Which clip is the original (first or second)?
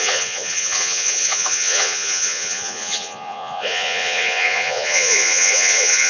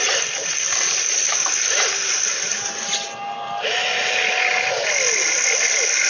second